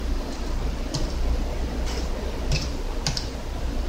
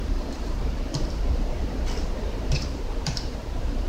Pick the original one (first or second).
first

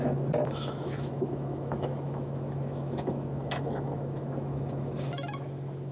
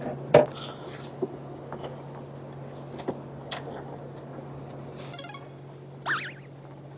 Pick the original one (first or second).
second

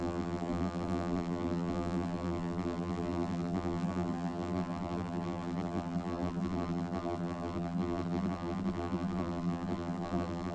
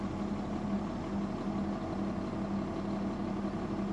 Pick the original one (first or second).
second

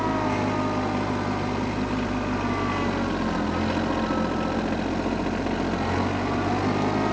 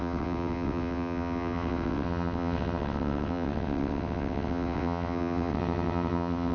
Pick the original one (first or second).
first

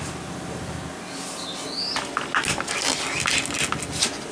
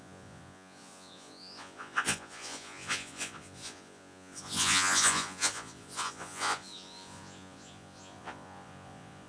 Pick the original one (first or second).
first